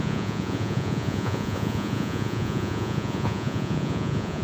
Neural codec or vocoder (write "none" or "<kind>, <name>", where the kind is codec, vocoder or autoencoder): vocoder, Vocos